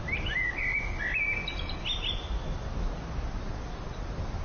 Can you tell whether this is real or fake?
real